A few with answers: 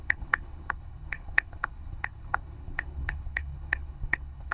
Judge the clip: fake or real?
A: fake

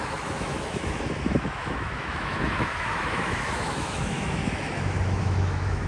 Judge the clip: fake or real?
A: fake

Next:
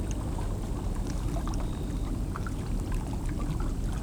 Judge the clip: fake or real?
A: fake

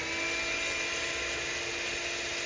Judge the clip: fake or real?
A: real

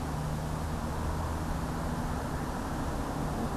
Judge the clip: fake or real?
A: real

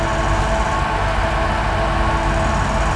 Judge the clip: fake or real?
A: real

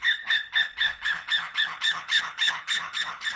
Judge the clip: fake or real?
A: fake